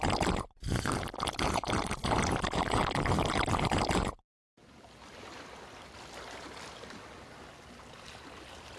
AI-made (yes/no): no